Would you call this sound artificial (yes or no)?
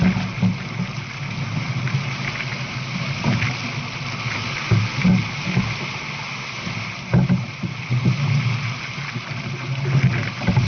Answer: no